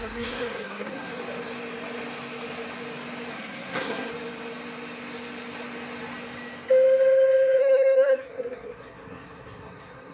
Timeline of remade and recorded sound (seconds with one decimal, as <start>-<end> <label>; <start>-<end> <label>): 0.0-1.1 remade; 1.1-3.3 recorded; 3.3-4.1 remade; 4.1-7.6 recorded; 7.6-10.1 remade